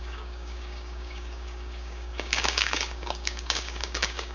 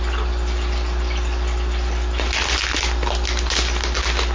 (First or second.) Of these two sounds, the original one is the second